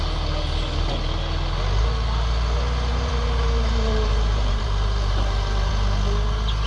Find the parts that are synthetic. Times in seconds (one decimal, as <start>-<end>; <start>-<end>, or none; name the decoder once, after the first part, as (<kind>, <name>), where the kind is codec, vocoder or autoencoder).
2.9-5.7 (vocoder, BigVGAN v2)